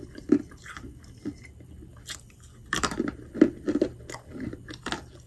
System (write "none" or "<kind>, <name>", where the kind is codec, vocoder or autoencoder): none